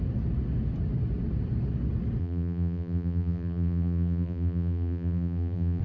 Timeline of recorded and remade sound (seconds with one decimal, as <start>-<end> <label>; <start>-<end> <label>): 0.0-2.2 recorded; 2.2-5.8 remade